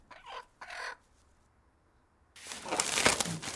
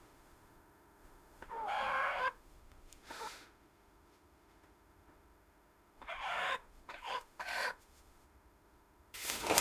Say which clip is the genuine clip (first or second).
first